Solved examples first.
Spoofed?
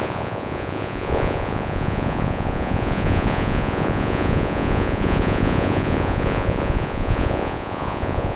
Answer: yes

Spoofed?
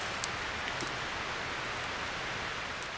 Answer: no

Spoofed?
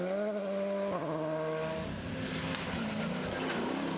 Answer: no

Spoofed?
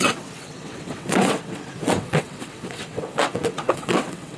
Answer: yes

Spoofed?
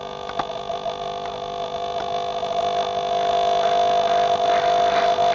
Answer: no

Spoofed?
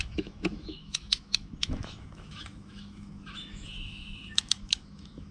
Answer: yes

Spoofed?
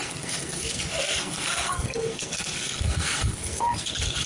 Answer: yes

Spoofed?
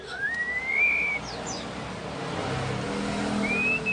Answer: no